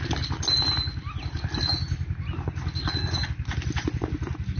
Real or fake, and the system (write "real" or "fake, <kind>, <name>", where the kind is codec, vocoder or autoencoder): real